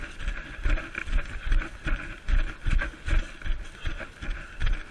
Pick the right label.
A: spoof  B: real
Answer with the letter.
B